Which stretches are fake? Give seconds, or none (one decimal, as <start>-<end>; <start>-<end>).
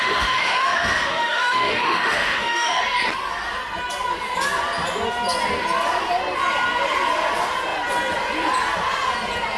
0.0-2.8